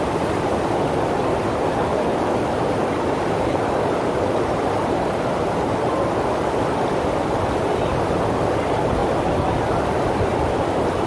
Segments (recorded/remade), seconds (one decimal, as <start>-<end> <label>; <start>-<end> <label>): 0.0-1.9 recorded; 1.9-5.9 remade; 5.9-9.0 recorded; 9.0-9.6 remade; 9.6-11.1 recorded